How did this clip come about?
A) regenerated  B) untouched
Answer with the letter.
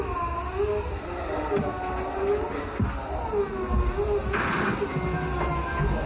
B